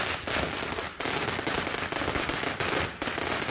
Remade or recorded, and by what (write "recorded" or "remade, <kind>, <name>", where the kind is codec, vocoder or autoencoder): recorded